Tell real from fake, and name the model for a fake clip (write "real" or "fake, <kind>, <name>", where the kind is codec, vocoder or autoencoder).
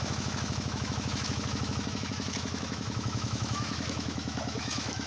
fake, autoencoder, DAC-VAE